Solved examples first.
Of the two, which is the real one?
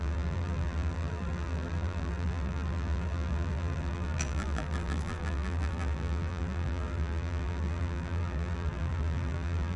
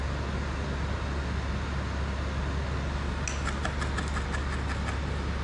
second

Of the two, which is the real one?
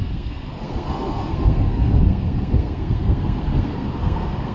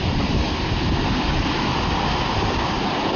second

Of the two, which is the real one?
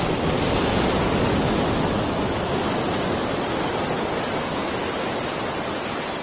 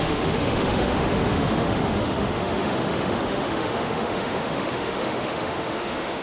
first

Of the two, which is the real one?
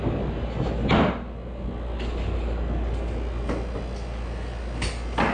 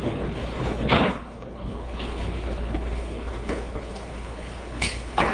first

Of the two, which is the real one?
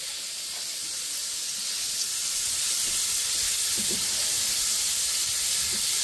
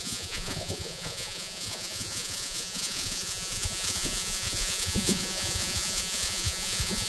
first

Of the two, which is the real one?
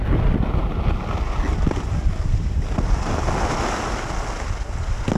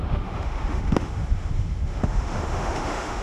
first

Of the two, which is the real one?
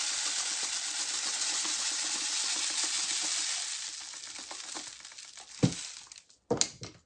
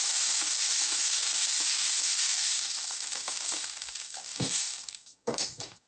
first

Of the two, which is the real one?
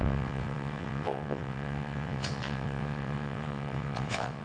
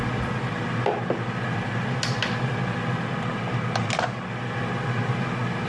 second